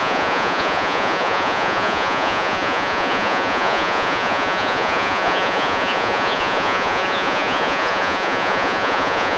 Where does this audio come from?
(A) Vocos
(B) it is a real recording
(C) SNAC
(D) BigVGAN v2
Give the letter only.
A